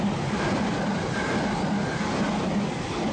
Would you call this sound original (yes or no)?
yes